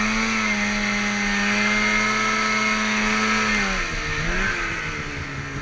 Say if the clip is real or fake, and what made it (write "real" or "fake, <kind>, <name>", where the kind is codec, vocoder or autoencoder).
real